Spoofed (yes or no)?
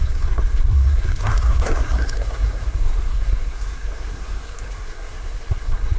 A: yes